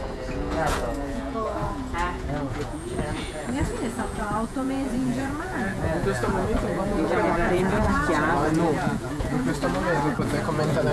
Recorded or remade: remade